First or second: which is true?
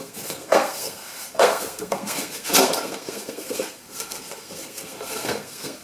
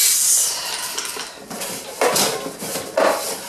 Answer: second